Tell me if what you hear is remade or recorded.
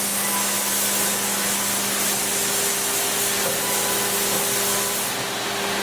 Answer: recorded